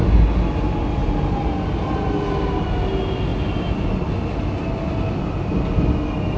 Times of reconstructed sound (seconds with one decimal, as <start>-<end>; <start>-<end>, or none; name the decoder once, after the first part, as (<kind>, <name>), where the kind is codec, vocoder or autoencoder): none